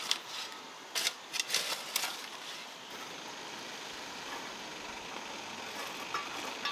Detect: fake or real real